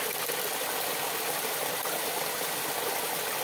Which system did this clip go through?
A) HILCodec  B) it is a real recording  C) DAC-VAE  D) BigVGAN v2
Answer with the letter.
B